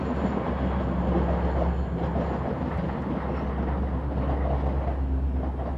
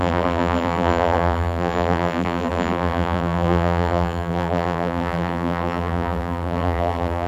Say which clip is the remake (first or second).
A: second